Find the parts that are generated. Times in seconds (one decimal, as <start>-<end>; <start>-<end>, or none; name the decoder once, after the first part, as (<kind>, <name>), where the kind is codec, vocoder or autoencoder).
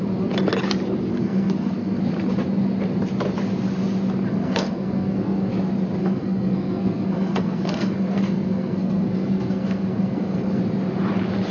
1.1-2.0 (codec, SNAC); 4.3-5.5; 6.0-10.6